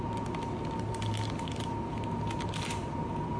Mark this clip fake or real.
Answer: real